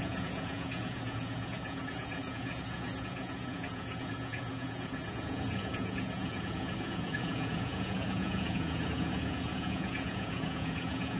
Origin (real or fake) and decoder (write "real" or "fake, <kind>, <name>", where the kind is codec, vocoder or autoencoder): fake, vocoder, Vocos